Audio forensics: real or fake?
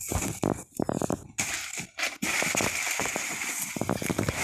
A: real